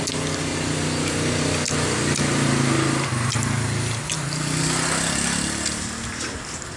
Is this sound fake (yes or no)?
no